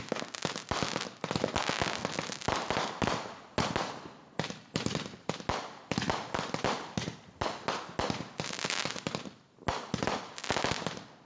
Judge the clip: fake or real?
real